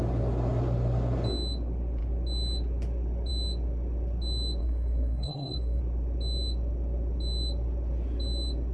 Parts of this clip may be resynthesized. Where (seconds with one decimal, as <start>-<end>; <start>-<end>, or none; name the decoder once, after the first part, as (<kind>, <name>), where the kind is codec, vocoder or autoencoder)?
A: 4.6-5.8 (codec, SNAC)